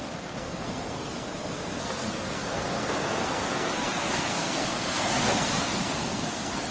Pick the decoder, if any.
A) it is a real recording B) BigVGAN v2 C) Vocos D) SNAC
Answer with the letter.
D